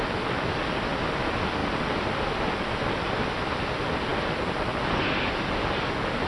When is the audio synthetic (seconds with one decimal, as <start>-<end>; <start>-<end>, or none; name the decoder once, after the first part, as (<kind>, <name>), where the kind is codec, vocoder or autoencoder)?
none